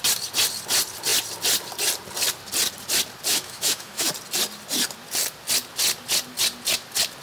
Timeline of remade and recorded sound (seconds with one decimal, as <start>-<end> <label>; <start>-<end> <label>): 0.0-3.3 recorded; 3.3-4.1 remade; 4.1-7.2 recorded